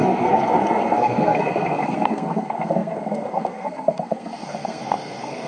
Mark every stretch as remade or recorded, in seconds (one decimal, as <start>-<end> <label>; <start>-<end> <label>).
0.0-5.5 remade